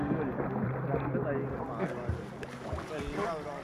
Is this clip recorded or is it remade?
recorded